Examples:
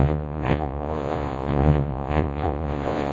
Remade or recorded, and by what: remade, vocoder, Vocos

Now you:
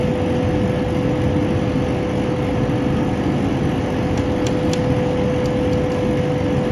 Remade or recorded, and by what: recorded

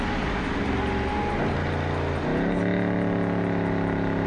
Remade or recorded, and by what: recorded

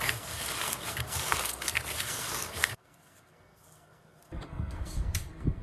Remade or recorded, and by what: remade, codec, SNAC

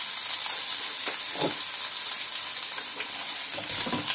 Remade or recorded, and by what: recorded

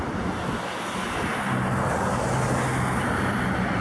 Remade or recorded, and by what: recorded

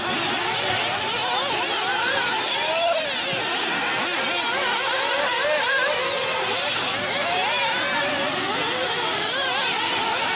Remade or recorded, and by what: recorded